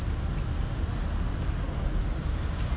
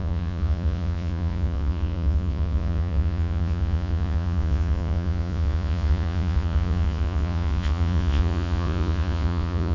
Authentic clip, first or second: first